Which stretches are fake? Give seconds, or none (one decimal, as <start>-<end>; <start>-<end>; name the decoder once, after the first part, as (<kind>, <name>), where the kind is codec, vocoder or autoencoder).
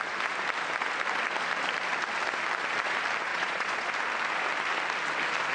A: 3.3-3.9 (vocoder, Vocos)